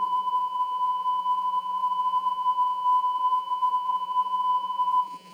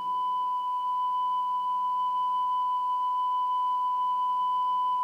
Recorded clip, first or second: second